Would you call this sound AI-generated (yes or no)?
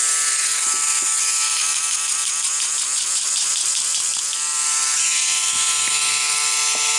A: no